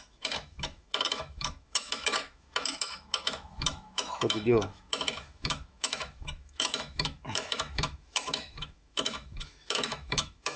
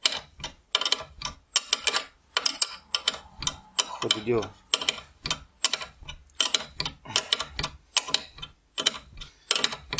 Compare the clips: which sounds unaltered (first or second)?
second